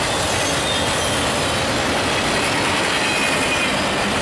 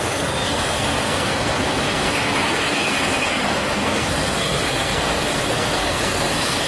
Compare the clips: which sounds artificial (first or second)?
second